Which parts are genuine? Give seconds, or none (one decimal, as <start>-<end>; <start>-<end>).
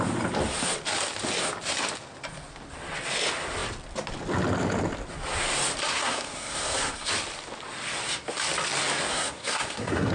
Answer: 0.0-5.9; 7.1-9.1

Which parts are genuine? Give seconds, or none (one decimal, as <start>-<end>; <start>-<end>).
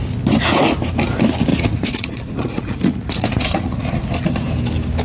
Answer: 0.0-1.5; 3.9-5.0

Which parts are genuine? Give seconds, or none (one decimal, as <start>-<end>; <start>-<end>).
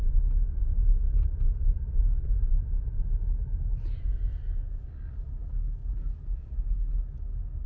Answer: 0.0-0.6; 3.2-5.8; 6.6-7.7